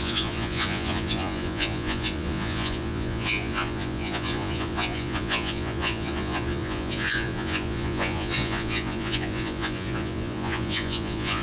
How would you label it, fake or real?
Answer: fake